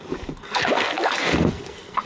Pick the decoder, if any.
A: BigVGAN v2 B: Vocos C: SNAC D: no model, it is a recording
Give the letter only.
C